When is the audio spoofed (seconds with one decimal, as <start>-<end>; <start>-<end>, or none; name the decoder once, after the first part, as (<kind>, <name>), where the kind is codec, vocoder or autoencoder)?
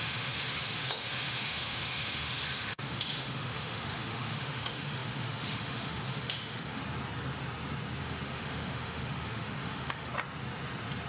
0.0-6.8 (autoencoder, DAC-VAE); 8.0-10.1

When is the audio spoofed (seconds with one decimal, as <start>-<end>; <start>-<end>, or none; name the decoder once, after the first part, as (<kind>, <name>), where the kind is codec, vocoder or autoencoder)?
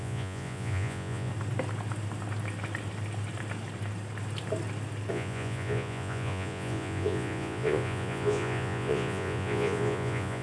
0.0-1.3 (vocoder, Vocos); 5.1-10.4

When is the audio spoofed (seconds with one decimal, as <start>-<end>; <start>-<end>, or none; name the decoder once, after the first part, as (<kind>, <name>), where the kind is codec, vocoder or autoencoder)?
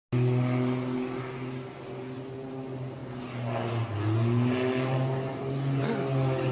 none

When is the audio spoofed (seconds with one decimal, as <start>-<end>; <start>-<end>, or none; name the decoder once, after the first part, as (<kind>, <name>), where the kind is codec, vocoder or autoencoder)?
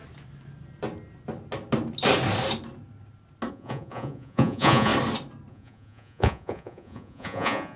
3.5-4.9 (vocoder, Vocos); 5.5-7.8